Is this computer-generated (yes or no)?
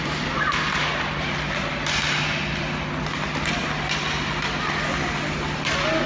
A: no